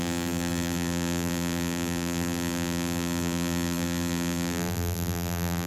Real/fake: fake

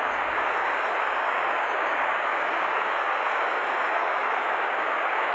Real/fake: fake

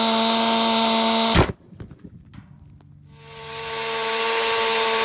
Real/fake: real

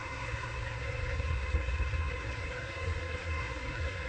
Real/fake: fake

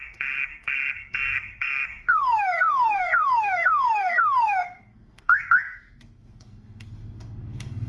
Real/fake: fake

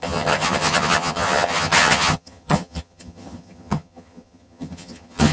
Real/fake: fake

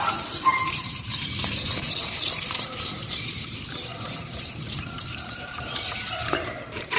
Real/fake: fake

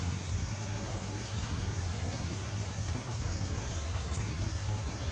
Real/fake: fake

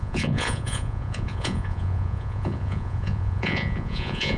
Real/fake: fake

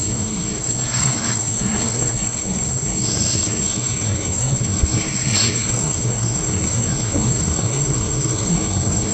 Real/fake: fake